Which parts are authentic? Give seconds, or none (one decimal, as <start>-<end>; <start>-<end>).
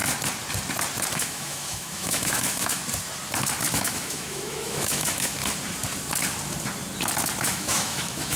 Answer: 0.0-1.1; 2.8-3.7; 5.4-7.4